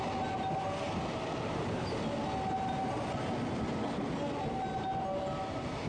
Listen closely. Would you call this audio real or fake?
real